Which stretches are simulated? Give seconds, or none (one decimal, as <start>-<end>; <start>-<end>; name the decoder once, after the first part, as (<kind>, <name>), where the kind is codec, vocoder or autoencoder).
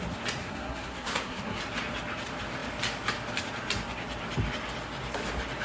0.4-1.6 (codec, SNAC)